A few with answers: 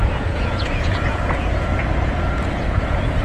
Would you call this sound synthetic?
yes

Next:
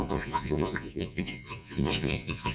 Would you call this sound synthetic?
yes